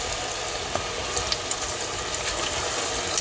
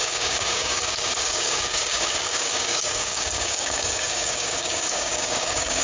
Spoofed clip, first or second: second